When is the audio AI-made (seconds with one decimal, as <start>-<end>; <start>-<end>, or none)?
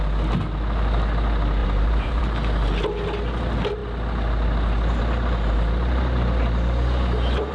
1.6-2.2